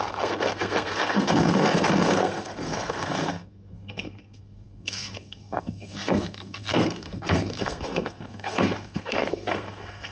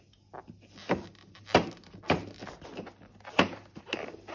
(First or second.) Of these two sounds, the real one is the second